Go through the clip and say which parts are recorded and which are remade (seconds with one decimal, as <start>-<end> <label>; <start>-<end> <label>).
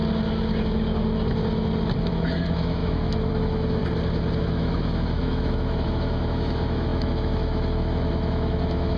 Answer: 0.0-2.1 recorded; 2.1-3.8 remade; 3.8-4.4 recorded; 4.4-9.0 remade